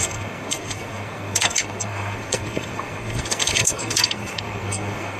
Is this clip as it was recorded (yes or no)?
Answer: no